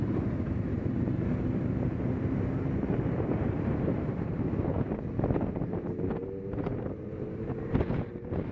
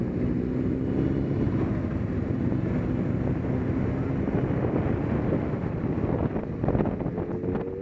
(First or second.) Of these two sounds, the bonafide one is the second